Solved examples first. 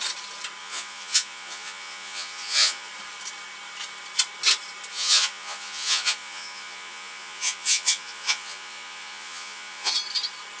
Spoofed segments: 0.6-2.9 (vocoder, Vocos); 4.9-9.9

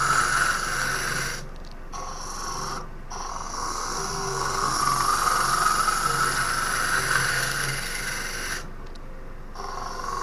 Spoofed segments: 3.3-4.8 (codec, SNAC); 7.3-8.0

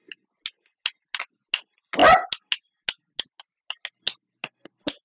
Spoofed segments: none

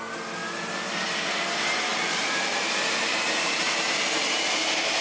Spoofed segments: 1.9-5.0 (vocoder, BigVGAN v2)

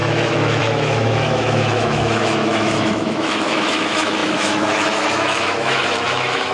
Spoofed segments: 0.0-6.5 (autoencoder, DAC-VAE)

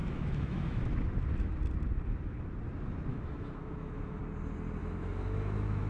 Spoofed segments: 0.0-0.8 (autoencoder, DAC-VAE); 3.1-4.2; 4.8-5.9

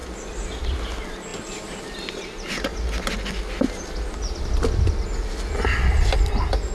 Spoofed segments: none